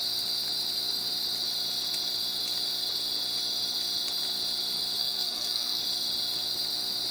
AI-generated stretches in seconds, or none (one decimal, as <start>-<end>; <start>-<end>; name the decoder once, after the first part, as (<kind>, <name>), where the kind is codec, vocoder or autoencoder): 5.0-5.8 (codec, SNAC)